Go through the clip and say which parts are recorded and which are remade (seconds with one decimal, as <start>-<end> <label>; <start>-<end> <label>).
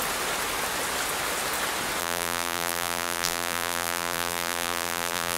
0.0-2.0 recorded; 2.0-5.4 remade